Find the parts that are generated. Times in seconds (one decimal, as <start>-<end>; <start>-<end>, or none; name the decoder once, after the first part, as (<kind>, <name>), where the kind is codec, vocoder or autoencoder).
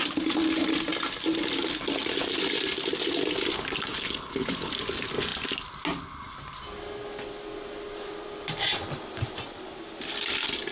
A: 3.9-4.7 (codec, HILCodec)